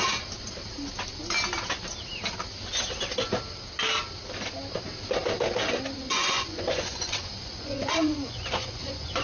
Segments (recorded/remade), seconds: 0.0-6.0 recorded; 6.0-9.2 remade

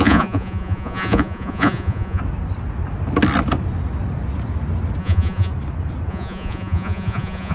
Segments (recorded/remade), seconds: 0.0-2.2 remade; 2.2-5.0 recorded; 5.0-5.5 remade; 5.5-6.1 recorded; 6.1-7.5 remade

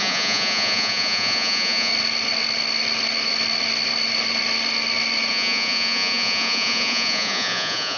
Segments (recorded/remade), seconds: 0.0-1.9 remade; 1.9-5.3 recorded; 5.3-8.0 remade